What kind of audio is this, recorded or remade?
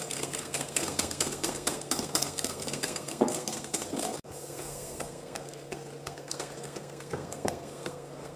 remade